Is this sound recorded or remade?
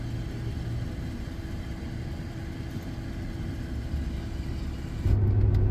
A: recorded